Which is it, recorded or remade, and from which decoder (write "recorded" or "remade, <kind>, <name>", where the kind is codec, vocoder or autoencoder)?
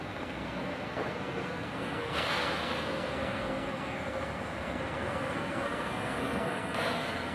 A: remade, codec, SNAC